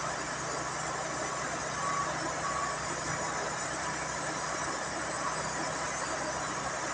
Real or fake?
real